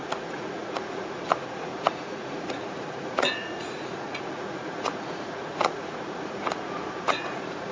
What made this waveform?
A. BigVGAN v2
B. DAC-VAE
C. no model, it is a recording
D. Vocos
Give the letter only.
D